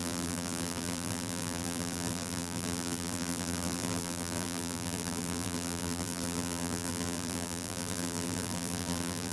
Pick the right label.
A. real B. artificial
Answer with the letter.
B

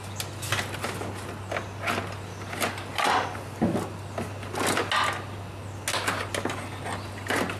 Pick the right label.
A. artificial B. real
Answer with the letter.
B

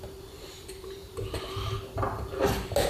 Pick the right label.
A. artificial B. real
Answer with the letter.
B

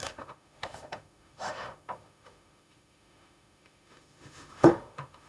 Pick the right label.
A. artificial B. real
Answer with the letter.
A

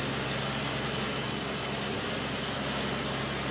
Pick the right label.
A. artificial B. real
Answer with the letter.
B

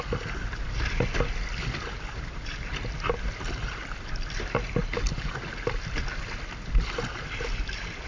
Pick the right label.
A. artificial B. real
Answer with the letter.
B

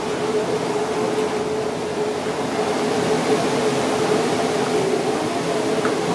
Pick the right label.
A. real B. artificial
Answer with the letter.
A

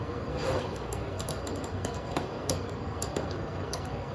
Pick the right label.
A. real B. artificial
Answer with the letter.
B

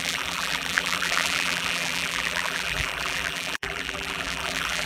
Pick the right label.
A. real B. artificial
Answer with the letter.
B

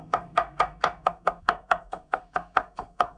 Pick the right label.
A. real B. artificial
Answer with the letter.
B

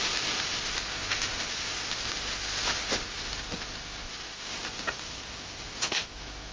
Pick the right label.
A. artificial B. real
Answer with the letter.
B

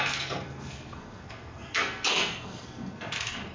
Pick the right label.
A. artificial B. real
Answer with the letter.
A